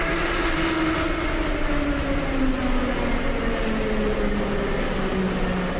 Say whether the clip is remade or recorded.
recorded